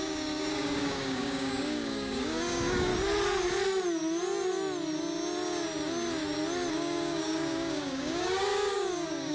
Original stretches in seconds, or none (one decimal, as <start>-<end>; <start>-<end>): 2.9-6.7

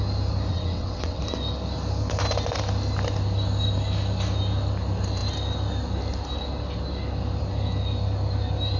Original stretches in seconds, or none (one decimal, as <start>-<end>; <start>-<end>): 0.0-0.5; 1.2-8.8

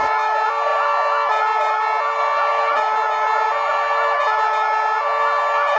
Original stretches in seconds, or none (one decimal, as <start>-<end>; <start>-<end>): 0.0-5.8

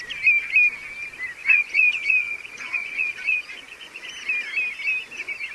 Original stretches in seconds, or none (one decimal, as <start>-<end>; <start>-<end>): 0.0-1.4; 4.1-5.5